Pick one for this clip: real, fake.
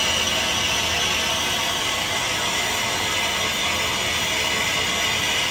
real